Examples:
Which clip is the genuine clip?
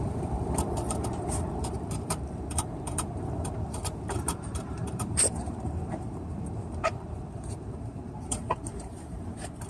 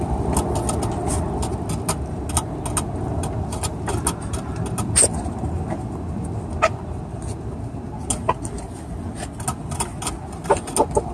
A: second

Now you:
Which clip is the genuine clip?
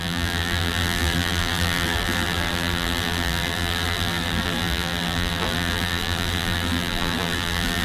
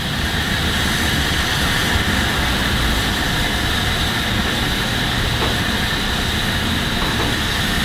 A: second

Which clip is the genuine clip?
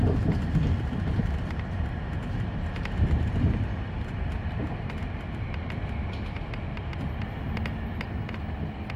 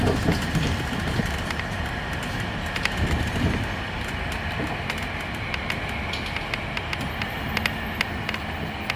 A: second